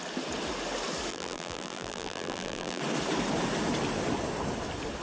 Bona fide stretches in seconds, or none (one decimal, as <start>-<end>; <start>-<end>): 0.0-1.1; 2.8-5.0